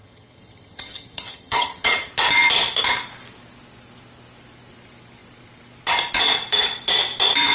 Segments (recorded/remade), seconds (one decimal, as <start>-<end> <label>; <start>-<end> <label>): 0.0-2.1 remade; 2.1-7.5 recorded